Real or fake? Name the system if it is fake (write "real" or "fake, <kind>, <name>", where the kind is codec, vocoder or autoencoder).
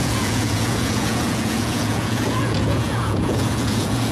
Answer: fake, vocoder, Vocos